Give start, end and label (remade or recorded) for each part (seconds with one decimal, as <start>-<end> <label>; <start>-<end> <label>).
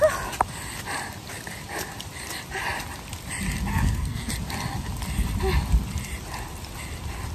0.0-3.7 recorded; 3.7-4.3 remade; 4.3-7.3 recorded